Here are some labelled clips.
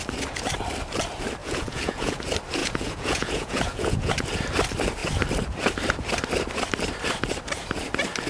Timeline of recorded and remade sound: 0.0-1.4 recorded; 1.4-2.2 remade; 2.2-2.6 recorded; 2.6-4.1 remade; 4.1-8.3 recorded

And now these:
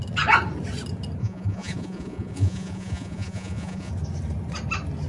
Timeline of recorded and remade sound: 0.0-1.2 recorded; 1.2-3.9 remade; 3.9-5.1 recorded

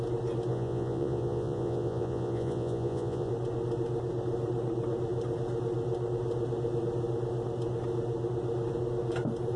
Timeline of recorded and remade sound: 0.0-0.5 recorded; 0.5-3.3 remade; 3.3-9.6 recorded

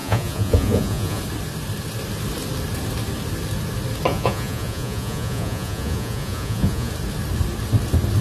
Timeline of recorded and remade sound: 0.0-1.2 remade; 1.2-4.1 recorded; 4.1-6.9 remade; 6.9-8.2 recorded